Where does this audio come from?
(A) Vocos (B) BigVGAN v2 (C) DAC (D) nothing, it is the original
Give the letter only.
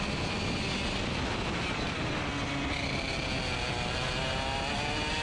D